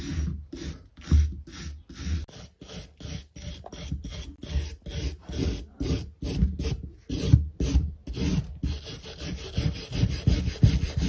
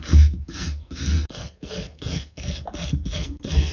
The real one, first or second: first